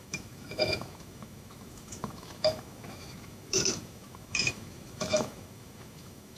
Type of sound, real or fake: fake